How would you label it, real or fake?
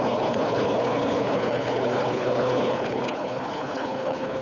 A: fake